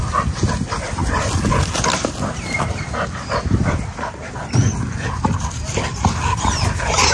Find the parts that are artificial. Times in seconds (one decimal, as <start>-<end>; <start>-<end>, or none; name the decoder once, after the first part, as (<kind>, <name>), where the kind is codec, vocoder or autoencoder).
none